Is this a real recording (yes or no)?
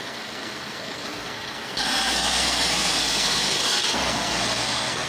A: no